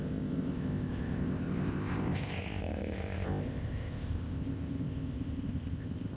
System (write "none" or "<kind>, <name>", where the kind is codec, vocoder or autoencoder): codec, ZipCodec